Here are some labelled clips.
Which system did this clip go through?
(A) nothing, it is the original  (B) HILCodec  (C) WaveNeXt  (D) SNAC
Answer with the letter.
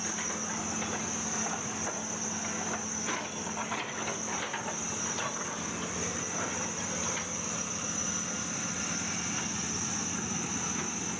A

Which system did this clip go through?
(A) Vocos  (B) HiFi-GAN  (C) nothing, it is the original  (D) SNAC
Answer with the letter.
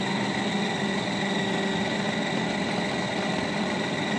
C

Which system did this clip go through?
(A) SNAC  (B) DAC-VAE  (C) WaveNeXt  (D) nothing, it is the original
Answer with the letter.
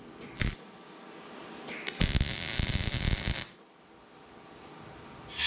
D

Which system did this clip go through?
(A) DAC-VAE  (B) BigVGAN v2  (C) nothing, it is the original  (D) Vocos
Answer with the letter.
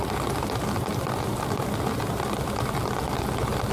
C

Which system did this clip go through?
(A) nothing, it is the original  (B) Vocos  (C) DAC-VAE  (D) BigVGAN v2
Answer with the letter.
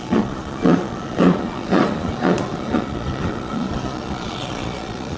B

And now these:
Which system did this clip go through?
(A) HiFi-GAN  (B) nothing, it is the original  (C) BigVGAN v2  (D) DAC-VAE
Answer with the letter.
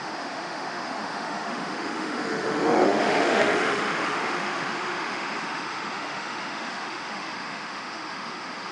D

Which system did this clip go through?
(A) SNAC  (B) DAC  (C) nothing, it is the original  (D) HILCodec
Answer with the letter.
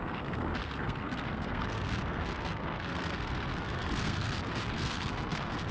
A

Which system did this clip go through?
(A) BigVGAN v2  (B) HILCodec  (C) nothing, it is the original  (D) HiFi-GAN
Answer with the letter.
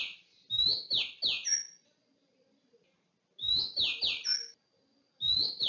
C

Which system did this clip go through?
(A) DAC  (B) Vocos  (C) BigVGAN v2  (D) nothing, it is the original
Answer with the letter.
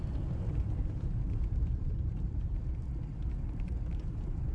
C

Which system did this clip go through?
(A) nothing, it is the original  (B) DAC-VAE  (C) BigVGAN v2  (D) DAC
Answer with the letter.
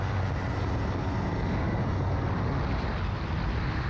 A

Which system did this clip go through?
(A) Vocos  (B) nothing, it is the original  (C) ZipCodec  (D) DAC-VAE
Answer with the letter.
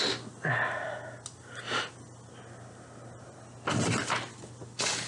B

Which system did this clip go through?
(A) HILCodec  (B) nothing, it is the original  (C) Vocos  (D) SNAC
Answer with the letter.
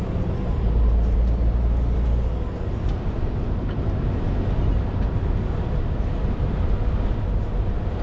B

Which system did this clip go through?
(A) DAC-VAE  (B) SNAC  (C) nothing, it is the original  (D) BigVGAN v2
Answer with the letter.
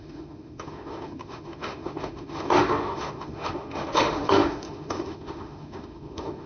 A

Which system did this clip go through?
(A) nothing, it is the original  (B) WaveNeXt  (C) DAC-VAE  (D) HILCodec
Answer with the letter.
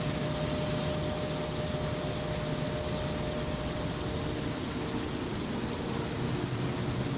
A